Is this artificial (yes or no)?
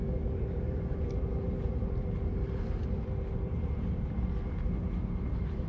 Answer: no